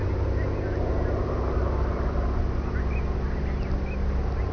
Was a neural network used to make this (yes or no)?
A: no